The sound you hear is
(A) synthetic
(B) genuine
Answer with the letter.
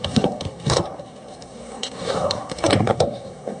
A